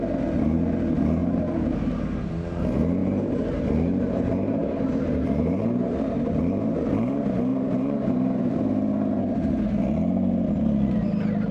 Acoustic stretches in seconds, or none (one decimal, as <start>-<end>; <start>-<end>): 0.0-1.2; 2.0-3.0; 3.6-4.6; 6.4-7.5; 9.2-11.5